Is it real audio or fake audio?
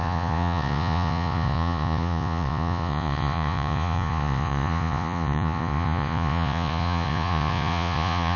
fake